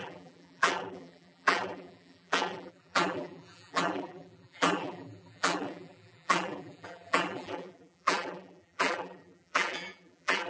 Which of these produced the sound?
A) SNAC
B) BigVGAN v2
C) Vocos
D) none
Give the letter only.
B